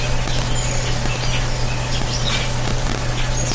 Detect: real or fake real